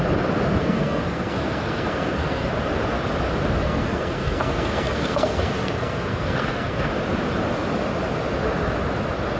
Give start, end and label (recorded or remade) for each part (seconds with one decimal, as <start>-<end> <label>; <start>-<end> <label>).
0.0-0.6 recorded; 0.6-2.5 remade; 2.5-3.6 recorded; 3.6-6.9 remade; 6.9-9.4 recorded